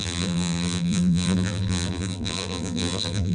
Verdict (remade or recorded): remade